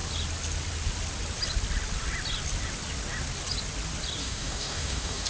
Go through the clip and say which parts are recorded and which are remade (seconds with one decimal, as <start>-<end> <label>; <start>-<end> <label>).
0.0-4.2 recorded; 4.2-5.3 remade